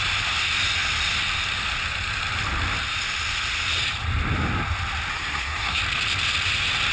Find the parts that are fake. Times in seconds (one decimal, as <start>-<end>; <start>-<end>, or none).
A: 5.1-5.8